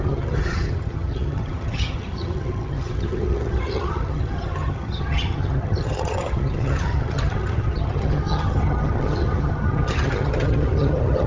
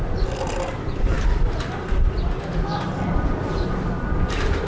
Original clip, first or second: second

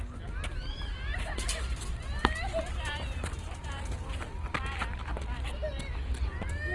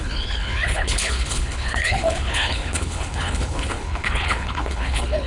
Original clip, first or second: first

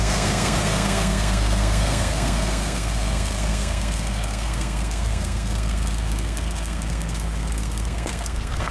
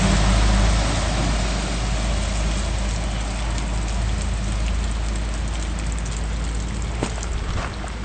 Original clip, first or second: second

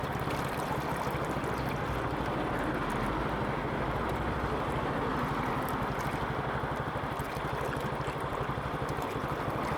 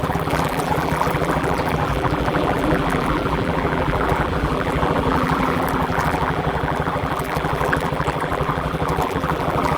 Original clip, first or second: first